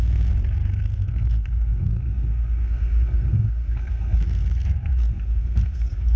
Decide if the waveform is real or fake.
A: fake